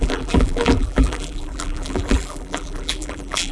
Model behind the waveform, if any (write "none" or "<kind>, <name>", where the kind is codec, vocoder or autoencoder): vocoder, BigVGAN v2